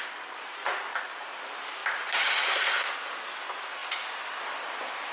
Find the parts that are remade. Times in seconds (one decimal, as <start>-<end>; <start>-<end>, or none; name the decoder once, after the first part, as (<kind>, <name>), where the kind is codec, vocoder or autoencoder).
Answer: 0.6-1.4 (vocoder, Vocos)